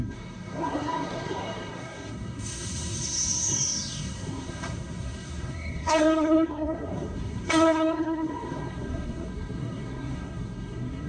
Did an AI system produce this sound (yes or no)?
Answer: yes